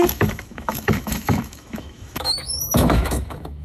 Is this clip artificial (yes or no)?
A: yes